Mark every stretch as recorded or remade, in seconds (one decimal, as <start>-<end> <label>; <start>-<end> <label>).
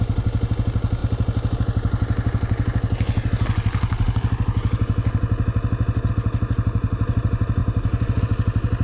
0.0-8.8 recorded